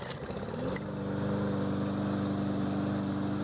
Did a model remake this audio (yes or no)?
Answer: no